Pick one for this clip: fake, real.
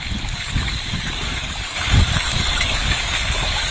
fake